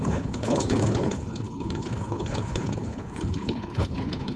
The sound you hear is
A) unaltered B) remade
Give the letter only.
B